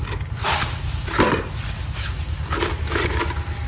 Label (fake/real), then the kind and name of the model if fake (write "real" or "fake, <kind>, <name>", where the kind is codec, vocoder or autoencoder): real